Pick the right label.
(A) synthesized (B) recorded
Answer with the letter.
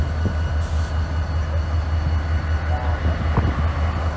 B